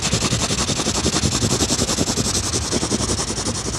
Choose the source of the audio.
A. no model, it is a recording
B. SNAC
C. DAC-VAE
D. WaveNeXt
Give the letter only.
A